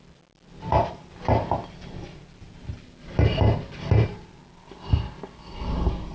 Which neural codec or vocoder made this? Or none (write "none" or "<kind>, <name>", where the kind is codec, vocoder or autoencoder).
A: none